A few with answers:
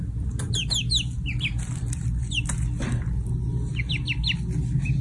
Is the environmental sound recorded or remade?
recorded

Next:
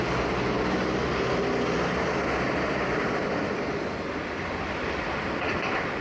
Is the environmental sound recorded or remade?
recorded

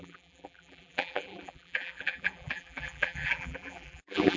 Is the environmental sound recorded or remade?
remade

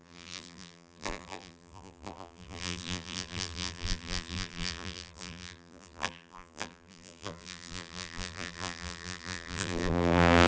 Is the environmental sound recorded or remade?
remade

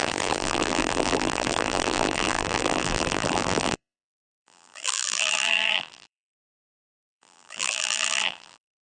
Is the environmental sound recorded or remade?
remade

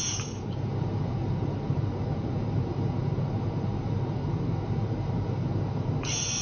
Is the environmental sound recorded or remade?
remade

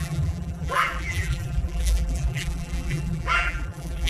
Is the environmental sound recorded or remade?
remade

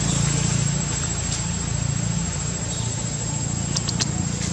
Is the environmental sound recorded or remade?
recorded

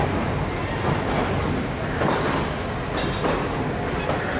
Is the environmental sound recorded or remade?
recorded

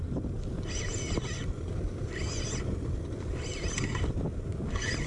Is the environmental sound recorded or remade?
recorded